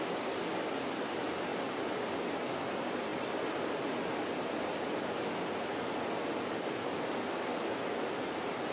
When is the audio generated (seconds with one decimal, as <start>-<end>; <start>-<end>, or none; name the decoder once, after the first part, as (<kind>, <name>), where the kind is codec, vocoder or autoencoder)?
none